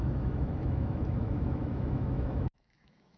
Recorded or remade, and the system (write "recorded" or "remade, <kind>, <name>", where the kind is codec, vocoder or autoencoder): remade, autoencoder, DAC-VAE